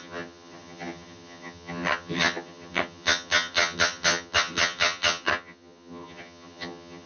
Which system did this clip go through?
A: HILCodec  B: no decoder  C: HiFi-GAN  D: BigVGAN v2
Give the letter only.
C